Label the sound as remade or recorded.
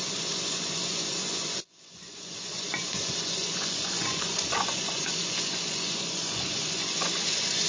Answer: remade